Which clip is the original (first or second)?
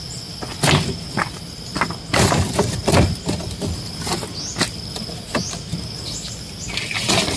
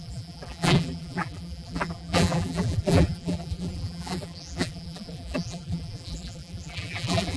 first